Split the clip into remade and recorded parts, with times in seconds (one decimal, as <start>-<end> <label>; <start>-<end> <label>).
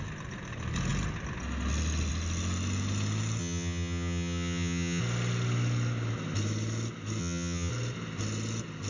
0.0-3.4 recorded; 3.4-5.0 remade; 5.0-7.2 recorded; 7.2-7.7 remade; 7.7-8.9 recorded